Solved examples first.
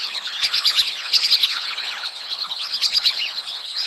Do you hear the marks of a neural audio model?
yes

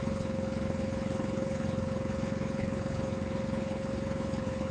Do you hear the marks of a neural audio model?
yes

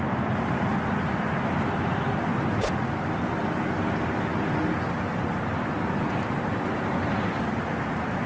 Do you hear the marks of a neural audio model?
no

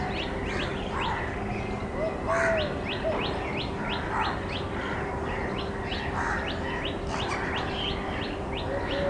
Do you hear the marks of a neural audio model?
no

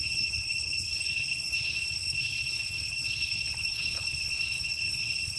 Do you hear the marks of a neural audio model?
yes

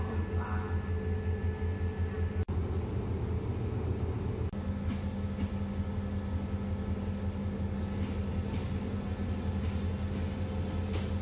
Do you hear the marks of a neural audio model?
no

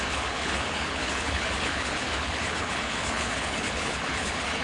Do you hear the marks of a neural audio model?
yes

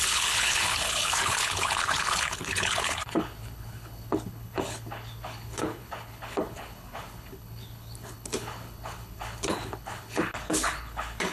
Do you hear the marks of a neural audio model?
yes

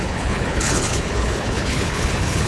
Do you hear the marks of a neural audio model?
yes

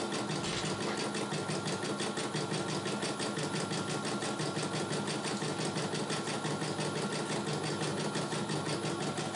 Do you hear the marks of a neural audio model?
no